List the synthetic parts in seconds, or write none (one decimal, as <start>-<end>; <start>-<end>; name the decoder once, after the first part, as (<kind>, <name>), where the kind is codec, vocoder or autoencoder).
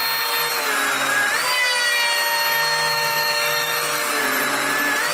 2.9-4.2 (autoencoder, DAC-VAE)